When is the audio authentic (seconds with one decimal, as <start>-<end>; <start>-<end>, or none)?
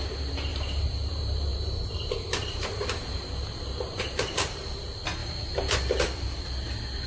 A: 0.0-0.5; 4.8-7.1